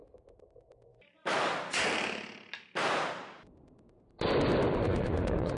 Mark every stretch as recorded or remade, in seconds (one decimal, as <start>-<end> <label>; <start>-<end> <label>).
0.0-4.7 recorded; 4.7-5.6 remade